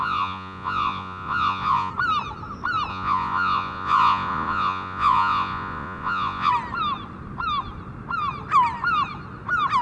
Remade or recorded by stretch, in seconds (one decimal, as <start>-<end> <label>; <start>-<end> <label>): 0.0-1.9 remade; 1.9-2.9 recorded; 2.9-6.5 remade; 6.5-9.8 recorded